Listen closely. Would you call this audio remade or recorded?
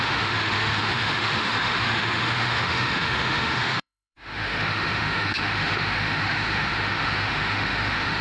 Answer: remade